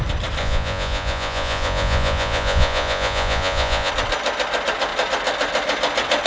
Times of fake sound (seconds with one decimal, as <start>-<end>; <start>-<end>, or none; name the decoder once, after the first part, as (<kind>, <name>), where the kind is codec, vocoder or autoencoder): 0.4-3.9 (vocoder, Vocos)